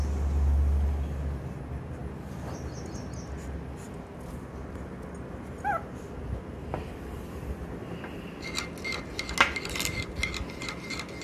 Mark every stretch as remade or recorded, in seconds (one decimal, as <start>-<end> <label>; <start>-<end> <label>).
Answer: 0.0-11.2 recorded